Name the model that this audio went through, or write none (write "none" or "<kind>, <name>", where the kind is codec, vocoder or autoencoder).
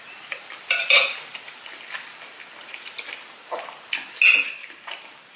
none